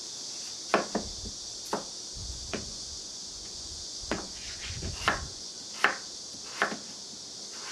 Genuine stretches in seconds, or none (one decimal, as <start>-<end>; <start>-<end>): 0.0-2.2; 5.8-7.7